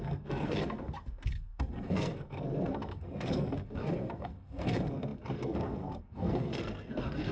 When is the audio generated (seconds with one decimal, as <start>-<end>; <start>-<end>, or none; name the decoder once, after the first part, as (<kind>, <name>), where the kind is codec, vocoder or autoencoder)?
0.0-7.3 (codec, SNAC)